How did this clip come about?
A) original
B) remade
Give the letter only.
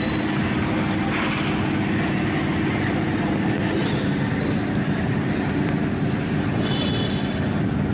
A